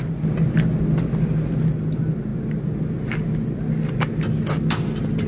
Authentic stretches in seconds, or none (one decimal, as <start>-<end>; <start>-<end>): 0.0-5.3